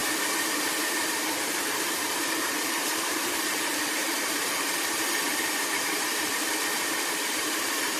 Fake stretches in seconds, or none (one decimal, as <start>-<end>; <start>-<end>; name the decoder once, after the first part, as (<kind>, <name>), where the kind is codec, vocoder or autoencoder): 0.0-6.3 (vocoder, BigVGAN v2); 7.3-8.0